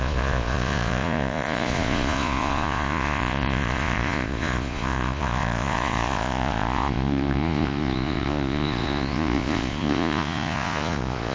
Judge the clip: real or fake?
fake